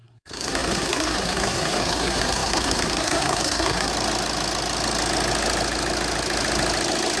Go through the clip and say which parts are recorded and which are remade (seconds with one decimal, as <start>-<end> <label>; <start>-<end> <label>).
0.0-3.9 remade; 3.9-7.2 recorded